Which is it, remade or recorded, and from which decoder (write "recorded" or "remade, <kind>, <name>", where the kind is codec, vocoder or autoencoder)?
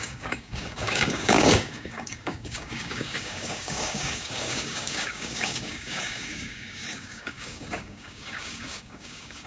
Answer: remade, codec, DAC